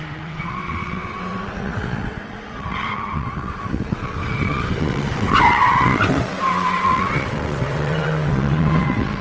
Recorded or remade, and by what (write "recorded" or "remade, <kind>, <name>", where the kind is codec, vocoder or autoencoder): remade, vocoder, WaveNeXt